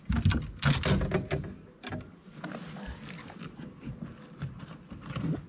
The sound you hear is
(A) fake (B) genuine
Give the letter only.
B